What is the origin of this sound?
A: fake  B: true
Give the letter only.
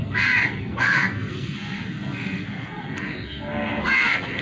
A